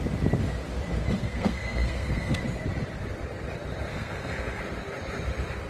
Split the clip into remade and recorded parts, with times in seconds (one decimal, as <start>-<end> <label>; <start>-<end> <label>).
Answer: 0.0-1.2 recorded; 1.2-2.4 remade; 2.4-3.9 recorded; 3.9-4.6 remade; 4.6-5.7 recorded

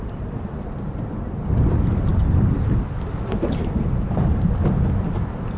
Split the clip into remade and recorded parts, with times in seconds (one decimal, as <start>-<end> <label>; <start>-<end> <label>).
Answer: 0.0-5.6 recorded